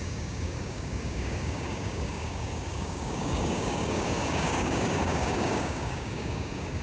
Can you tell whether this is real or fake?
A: fake